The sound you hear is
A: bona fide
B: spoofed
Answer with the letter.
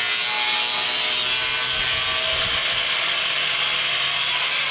A